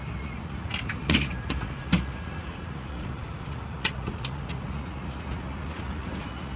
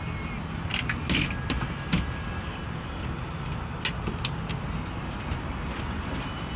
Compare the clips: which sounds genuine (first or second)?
second